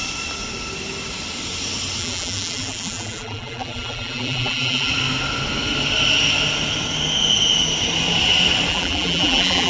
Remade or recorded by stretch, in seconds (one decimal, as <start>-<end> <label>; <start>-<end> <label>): 0.0-2.0 recorded; 2.0-4.9 remade; 4.9-8.7 recorded; 8.7-9.7 remade